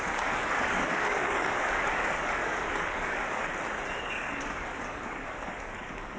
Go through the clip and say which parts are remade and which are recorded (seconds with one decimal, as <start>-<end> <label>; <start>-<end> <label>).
0.0-3.5 remade; 3.5-4.0 recorded; 4.0-6.2 remade